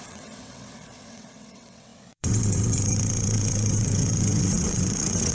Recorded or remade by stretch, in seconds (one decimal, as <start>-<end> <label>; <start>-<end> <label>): 0.0-5.3 remade